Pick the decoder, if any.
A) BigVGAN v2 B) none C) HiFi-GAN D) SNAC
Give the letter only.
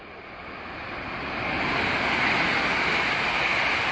B